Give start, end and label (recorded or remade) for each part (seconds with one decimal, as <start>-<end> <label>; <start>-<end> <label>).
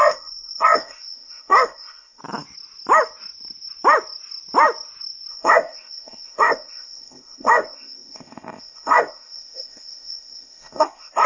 0.0-2.2 remade; 2.2-5.3 recorded; 5.3-11.3 remade